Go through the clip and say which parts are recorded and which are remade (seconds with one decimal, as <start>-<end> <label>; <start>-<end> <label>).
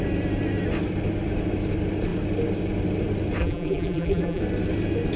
0.0-3.4 recorded; 3.4-4.4 remade; 4.4-5.2 recorded